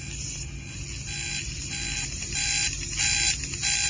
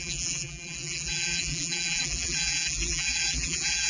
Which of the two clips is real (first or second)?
first